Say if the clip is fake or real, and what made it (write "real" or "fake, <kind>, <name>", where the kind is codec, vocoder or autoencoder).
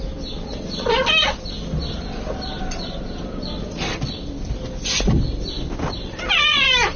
real